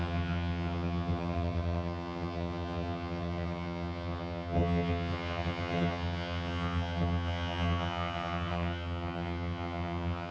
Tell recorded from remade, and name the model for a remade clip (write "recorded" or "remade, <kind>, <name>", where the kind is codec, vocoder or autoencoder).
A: remade, vocoder, HiFi-GAN